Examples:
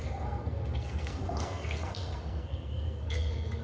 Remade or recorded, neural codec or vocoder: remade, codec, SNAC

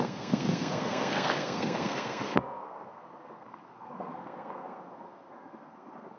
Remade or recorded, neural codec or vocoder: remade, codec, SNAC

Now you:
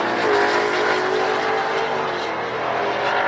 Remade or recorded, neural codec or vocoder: recorded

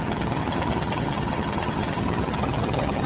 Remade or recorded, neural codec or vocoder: remade, vocoder, HiFi-GAN